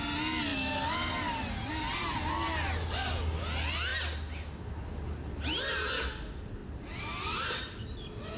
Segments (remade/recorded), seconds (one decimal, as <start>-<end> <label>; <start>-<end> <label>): 0.0-8.4 recorded